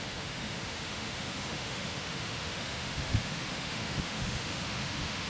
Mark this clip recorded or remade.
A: remade